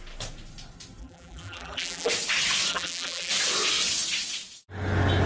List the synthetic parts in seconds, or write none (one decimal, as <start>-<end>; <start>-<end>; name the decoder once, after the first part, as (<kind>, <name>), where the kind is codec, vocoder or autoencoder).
1.0-2.1 (vocoder, BigVGAN v2); 2.7-3.3